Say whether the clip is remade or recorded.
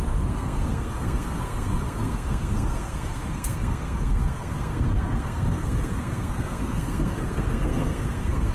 remade